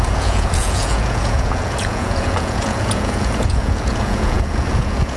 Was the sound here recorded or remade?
remade